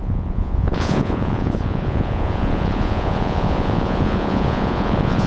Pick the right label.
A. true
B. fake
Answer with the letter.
B